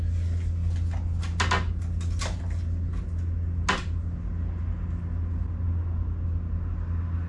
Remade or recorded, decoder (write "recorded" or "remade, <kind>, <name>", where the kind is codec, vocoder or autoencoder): recorded